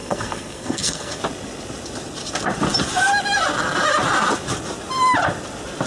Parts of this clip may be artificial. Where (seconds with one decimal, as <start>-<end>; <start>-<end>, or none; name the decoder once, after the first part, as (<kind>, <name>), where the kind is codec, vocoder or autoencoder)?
0.0-1.2 (codec, SNAC)